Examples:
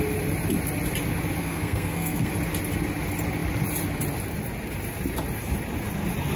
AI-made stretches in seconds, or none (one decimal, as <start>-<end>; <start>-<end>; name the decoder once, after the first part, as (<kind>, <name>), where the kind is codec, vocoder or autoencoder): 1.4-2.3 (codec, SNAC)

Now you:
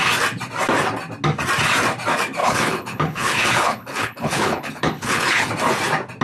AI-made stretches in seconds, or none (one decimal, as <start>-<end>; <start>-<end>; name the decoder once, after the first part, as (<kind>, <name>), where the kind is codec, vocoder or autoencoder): 2.4-5.5 (codec, HILCodec)

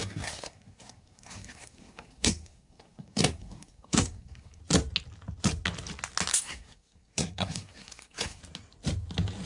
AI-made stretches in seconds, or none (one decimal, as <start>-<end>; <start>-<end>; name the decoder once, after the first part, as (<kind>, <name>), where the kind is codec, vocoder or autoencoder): 0.0-4.6 (codec, SNAC); 6.3-8.4

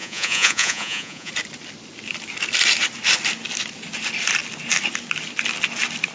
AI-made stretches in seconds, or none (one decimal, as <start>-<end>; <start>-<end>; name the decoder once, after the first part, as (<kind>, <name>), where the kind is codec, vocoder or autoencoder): 0.0-1.3 (vocoder, Vocos)

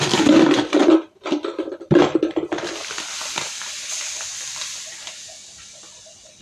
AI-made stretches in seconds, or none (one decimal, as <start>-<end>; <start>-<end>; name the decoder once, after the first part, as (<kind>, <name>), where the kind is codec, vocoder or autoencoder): 0.8-2.2 (vocoder, BigVGAN v2); 2.8-4.9

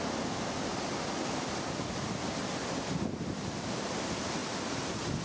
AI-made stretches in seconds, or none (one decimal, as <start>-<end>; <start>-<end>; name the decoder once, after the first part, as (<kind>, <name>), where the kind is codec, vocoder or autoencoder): none